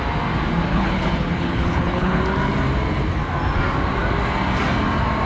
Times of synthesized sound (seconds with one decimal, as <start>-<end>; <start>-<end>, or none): 0.7-2.2